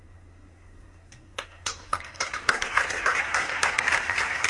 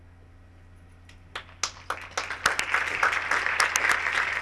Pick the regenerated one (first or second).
first